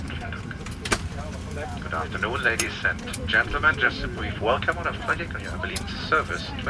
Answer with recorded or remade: remade